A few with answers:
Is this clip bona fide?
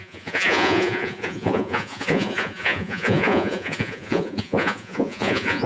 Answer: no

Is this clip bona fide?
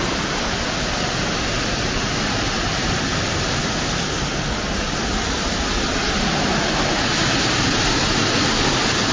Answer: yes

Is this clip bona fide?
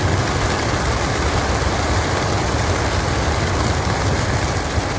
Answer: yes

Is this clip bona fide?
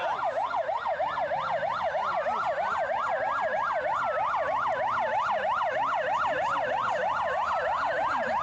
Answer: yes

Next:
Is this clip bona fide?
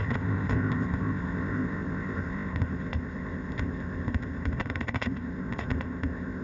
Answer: no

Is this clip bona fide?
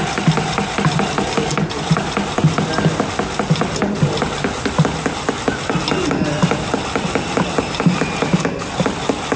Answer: yes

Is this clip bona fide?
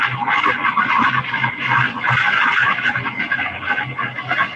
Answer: yes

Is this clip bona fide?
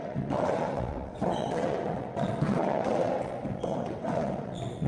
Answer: no